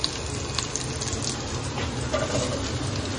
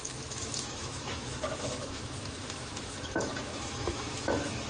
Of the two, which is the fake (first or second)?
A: second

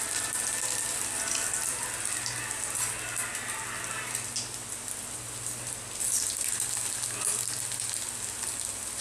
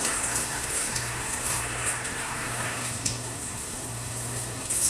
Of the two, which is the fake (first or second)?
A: second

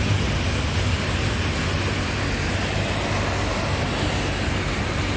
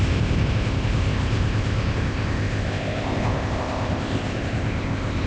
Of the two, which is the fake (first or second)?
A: second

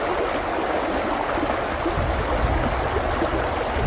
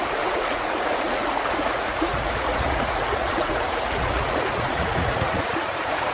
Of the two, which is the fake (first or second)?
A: second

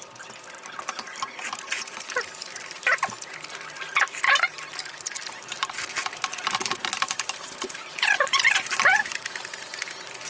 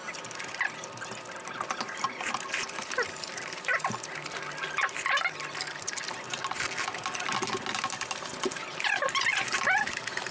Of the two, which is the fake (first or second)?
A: first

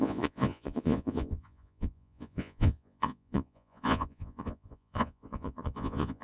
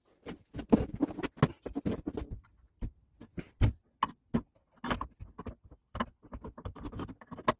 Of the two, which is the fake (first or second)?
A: first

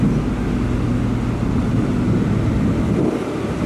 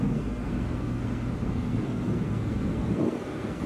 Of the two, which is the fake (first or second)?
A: second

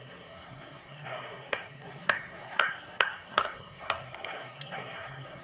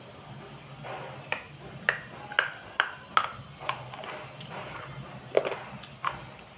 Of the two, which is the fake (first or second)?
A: first